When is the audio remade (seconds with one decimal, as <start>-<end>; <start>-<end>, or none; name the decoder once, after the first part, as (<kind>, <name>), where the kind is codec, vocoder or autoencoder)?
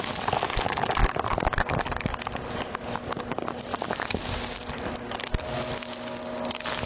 none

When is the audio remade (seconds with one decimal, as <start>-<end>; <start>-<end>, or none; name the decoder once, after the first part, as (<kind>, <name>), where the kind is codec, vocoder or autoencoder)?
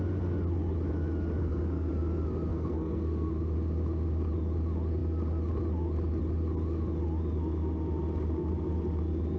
1.4-1.9 (codec, SNAC); 2.5-3.3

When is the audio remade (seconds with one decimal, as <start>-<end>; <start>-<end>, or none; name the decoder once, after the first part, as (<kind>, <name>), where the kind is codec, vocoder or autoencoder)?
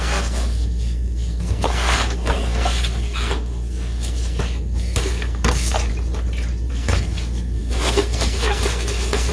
0.0-5.9 (codec, SNAC); 6.7-9.3